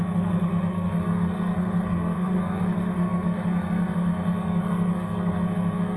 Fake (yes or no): yes